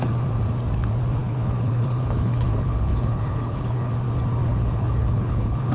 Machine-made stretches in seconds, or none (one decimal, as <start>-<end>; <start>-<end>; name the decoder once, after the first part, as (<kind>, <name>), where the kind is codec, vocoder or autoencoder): 1.2-3.9 (codec, HILCodec); 4.5-5.7